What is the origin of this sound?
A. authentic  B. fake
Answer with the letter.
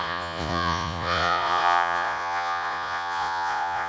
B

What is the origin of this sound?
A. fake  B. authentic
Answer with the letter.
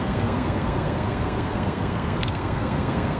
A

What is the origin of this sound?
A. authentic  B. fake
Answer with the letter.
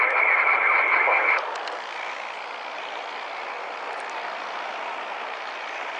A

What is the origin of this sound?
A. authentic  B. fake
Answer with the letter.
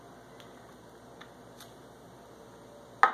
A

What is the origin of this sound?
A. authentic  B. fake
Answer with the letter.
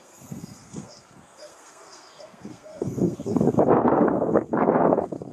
B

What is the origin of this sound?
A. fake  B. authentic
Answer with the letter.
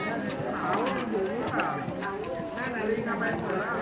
B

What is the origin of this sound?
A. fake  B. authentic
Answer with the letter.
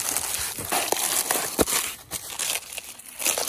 B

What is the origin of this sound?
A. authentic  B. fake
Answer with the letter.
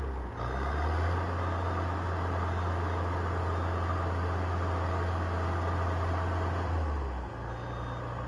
A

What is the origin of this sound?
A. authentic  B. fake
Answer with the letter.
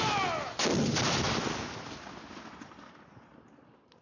A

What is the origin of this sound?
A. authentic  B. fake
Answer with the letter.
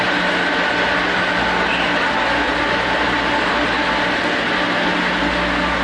A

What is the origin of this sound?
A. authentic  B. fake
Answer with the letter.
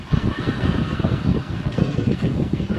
B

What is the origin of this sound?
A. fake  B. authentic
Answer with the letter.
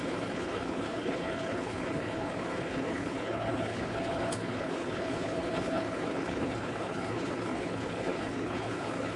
A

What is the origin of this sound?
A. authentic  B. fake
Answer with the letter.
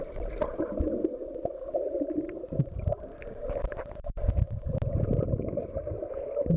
A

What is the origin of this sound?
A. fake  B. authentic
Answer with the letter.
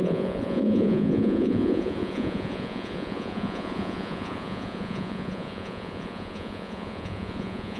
A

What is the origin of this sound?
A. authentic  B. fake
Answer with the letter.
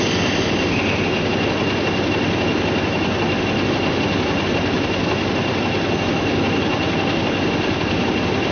A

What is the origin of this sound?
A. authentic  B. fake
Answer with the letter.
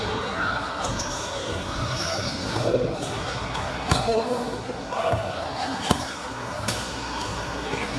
B